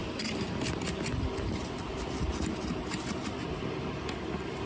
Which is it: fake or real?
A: fake